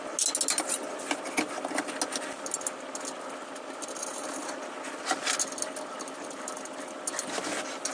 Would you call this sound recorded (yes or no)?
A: yes